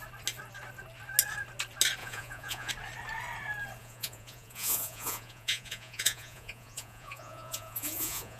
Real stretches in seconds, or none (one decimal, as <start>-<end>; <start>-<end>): 0.0-2.0; 2.7-3.8